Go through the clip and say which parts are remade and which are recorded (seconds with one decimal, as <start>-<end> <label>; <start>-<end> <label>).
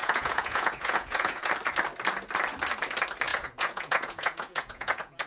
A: 0.0-1.5 remade; 1.5-3.3 recorded; 3.3-5.3 remade